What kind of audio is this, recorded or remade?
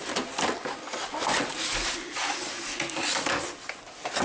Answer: recorded